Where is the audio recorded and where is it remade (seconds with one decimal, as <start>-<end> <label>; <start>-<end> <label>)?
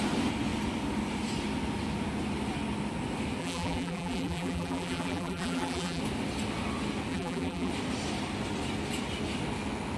0.0-3.4 recorded; 3.4-6.0 remade; 6.0-7.1 recorded; 7.1-7.7 remade; 7.7-10.0 recorded